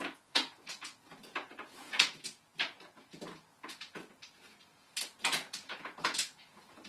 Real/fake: fake